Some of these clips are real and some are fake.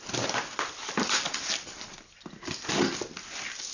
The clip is real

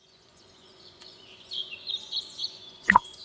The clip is fake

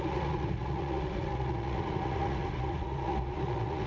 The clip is fake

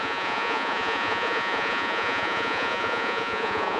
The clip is fake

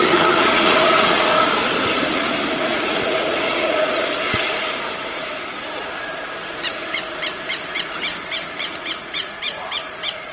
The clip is fake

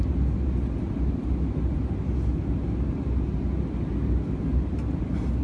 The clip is real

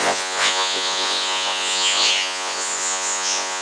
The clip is fake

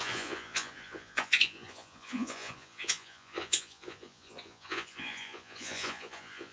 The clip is fake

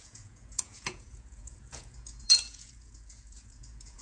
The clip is fake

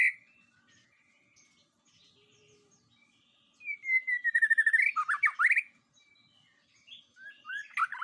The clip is real